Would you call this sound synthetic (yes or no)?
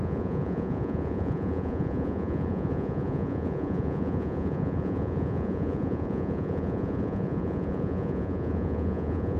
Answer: yes